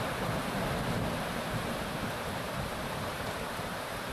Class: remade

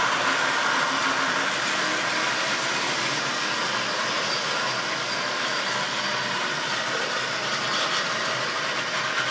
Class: recorded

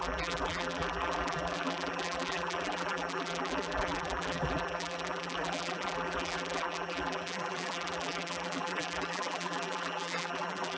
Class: remade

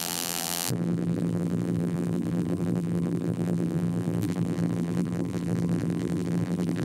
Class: remade